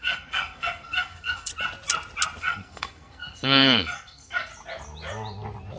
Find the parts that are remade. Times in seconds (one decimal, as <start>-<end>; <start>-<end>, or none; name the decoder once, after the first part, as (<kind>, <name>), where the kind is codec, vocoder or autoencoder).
0.0-1.5 (codec, SNAC); 2.4-4.5